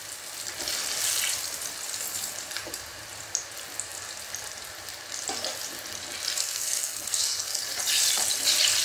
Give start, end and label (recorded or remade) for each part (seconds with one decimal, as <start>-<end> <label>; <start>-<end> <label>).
0.0-6.4 recorded; 6.4-7.6 remade; 7.6-8.8 recorded